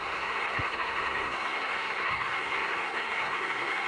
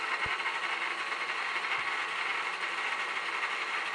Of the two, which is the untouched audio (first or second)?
second